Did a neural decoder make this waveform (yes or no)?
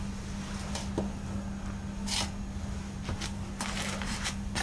no